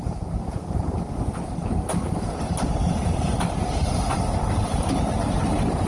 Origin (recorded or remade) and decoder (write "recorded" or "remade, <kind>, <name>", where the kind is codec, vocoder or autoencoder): recorded